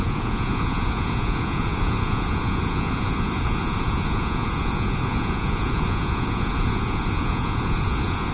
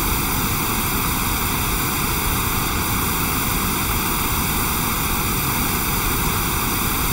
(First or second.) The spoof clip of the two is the first